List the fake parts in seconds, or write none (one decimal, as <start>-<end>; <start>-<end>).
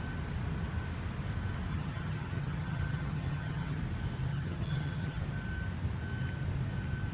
1.7-3.8; 4.3-5.2